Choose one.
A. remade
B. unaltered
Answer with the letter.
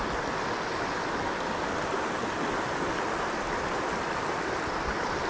B